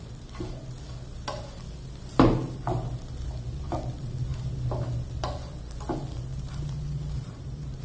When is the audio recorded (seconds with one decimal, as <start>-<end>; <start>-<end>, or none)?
0.0-6.3